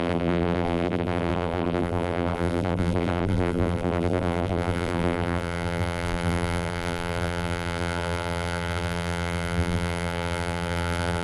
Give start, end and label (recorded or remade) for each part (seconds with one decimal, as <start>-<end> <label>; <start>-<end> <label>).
0.0-11.2 remade

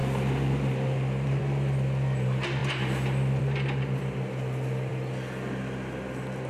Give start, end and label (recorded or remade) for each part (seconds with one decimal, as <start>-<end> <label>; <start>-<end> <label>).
0.0-1.4 remade; 1.4-6.5 recorded

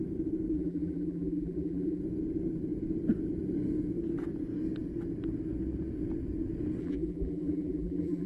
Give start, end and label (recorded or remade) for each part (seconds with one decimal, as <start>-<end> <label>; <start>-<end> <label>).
0.0-0.5 recorded; 0.5-2.0 remade; 2.0-6.8 recorded; 6.8-8.3 remade

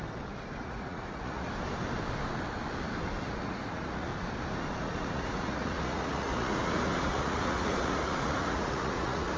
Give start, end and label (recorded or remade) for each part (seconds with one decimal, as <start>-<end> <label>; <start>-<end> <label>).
0.0-0.6 recorded; 0.6-1.5 remade; 1.5-3.2 recorded; 3.2-4.1 remade; 4.1-4.7 recorded; 4.7-9.4 remade

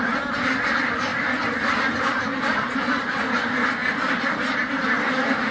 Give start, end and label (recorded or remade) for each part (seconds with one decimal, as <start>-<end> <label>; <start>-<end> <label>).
0.0-1.1 recorded; 1.1-3.2 remade; 3.2-3.8 recorded; 3.8-4.5 remade; 4.5-5.5 recorded

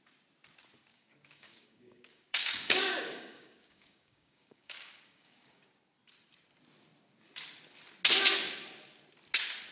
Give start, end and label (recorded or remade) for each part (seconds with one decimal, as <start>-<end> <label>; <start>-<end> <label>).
0.0-0.9 recorded; 0.9-5.7 remade; 5.7-9.7 recorded

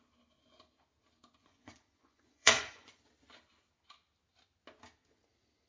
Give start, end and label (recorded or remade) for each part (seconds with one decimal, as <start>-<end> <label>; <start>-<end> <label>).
0.0-1.4 recorded; 1.4-3.0 remade; 3.0-5.7 recorded

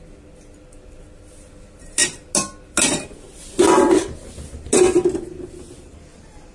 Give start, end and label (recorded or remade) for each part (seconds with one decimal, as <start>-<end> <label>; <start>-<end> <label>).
0.0-6.5 recorded